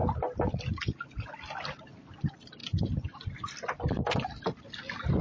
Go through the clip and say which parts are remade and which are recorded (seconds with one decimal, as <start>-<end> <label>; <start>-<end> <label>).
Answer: 0.0-5.2 recorded